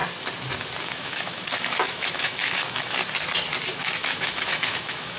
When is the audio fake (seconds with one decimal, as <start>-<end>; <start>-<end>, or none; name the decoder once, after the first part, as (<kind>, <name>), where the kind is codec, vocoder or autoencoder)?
0.8-3.0 (autoencoder, DAC-VAE); 3.8-5.2